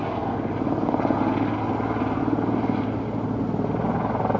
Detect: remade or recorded recorded